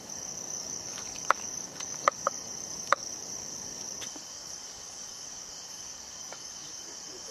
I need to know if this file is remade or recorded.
remade